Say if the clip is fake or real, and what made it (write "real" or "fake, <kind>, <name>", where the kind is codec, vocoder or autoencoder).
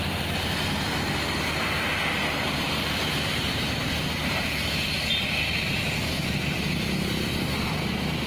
real